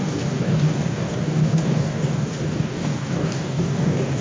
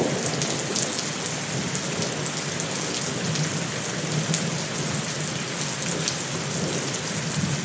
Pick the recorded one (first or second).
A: second